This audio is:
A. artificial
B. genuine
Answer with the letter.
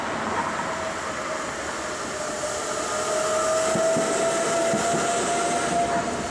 B